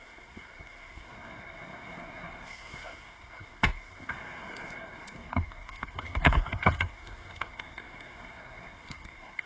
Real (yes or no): no